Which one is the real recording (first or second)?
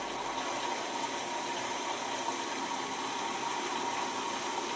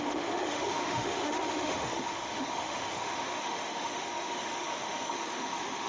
first